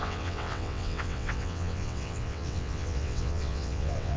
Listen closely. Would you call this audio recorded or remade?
remade